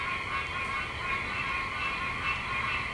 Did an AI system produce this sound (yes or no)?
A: no